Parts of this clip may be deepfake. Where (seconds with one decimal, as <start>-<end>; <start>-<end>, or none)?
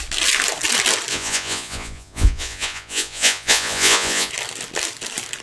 1.1-4.3